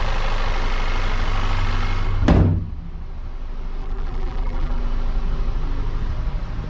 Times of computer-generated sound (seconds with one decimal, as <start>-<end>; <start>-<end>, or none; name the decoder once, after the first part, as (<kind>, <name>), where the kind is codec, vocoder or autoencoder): 3.8-4.8 (vocoder, BigVGAN v2)